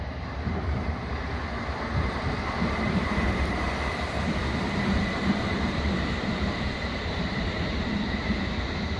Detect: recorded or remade remade